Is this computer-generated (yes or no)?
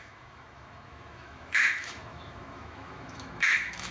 yes